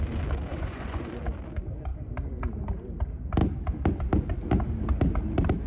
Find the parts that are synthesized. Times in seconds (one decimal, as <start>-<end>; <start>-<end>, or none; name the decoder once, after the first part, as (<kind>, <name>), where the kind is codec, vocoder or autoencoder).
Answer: 0.5-1.2 (vocoder, Vocos)